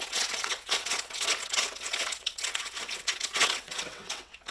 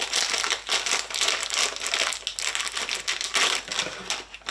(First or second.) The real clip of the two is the second